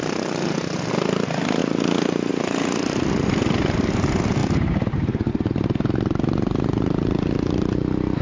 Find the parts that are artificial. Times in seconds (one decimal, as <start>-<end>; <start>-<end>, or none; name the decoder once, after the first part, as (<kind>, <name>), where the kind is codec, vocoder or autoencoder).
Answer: none

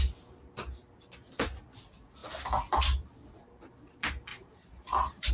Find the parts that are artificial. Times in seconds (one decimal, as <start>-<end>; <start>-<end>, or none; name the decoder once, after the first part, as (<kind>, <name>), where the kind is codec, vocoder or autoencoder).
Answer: 4.3-5.3 (vocoder, BigVGAN v2)